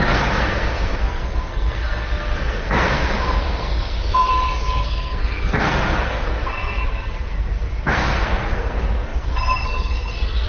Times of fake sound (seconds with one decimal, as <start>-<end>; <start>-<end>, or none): 0.0-10.5